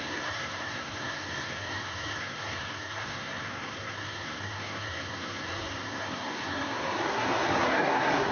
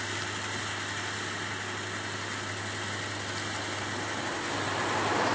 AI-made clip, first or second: first